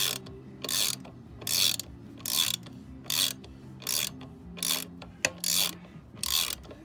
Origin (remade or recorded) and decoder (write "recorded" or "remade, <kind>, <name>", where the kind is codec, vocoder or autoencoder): recorded